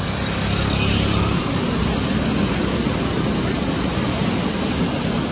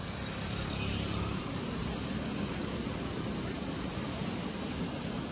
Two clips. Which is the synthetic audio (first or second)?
second